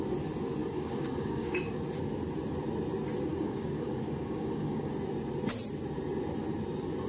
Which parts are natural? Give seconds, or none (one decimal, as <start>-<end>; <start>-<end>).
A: 0.0-0.6; 1.7-3.3; 4.9-7.1